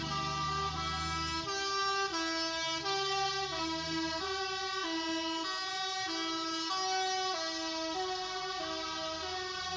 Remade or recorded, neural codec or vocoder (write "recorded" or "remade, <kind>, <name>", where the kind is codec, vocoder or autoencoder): recorded